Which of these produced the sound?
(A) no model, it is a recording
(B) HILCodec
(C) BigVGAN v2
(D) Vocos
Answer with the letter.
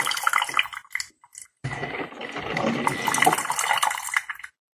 A